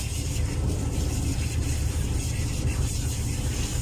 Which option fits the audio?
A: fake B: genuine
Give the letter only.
A